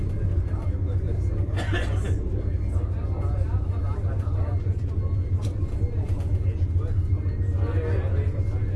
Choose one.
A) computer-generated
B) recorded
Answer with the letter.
B